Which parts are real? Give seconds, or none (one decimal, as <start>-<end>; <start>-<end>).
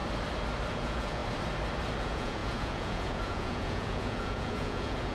0.0-0.7; 1.2-2.0